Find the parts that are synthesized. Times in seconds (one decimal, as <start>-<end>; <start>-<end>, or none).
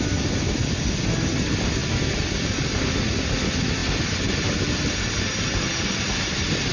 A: none